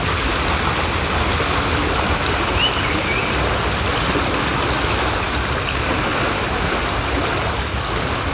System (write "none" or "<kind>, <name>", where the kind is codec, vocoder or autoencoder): none